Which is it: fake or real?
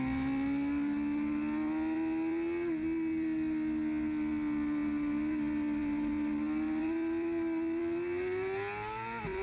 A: real